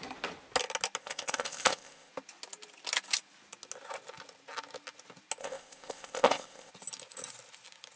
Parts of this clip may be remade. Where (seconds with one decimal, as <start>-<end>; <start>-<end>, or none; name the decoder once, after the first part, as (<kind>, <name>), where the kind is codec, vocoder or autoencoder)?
1.0-2.1 (codec, ZipCodec); 5.4-6.7

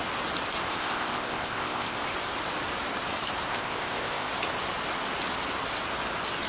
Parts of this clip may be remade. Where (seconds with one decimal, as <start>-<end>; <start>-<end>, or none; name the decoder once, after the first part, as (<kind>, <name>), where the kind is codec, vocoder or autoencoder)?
0.7-2.0 (codec, ZipCodec); 3.5-4.3

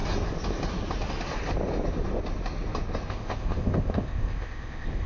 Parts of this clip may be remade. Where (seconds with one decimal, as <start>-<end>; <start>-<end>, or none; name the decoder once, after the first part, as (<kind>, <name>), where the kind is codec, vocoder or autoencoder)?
3.1-5.1 (codec, ZipCodec)

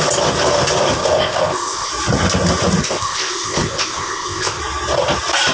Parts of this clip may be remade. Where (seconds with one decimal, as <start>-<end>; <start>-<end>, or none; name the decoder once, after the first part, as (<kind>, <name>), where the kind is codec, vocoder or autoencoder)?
1.0-1.9 (codec, ZipCodec); 2.8-4.6

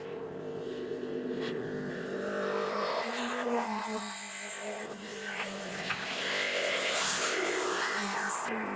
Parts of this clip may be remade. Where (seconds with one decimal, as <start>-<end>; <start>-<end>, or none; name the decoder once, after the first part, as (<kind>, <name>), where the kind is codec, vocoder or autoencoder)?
0.0-8.8 (codec, ZipCodec)